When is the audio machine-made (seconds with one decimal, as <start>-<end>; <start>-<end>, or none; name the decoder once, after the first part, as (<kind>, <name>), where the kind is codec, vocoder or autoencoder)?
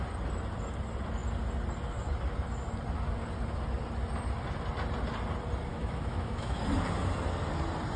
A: 5.7-6.6 (autoencoder, DAC-VAE)